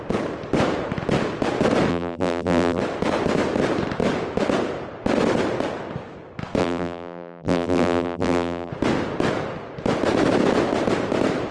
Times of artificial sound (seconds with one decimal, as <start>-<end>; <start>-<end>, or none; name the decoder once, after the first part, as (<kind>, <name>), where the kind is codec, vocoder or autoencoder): 1.9-2.8 (vocoder, BigVGAN v2); 6.6-8.7